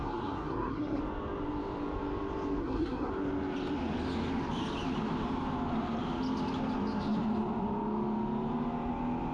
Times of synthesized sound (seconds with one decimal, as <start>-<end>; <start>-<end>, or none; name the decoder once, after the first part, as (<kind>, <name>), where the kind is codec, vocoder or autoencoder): 0.0-1.0 (codec, SNAC); 2.6-3.1